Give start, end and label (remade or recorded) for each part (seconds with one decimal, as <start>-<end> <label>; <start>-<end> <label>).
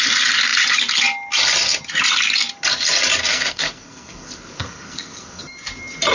0.0-3.3 recorded; 3.3-5.4 remade; 5.4-6.1 recorded